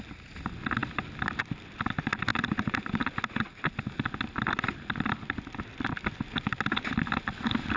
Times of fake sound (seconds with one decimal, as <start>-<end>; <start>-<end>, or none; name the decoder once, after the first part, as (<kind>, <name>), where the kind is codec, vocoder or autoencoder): none